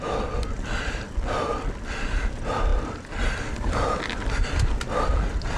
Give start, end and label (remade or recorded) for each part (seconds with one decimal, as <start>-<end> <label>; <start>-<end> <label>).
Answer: 0.0-5.6 recorded